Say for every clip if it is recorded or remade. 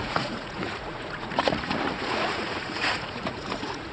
remade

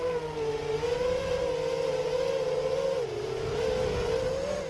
recorded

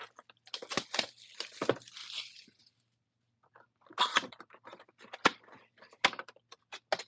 recorded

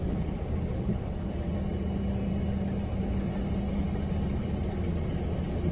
recorded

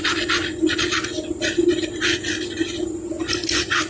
recorded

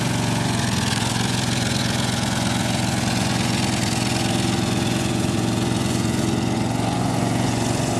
remade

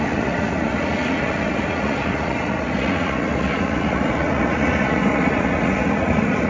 remade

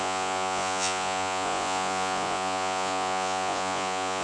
remade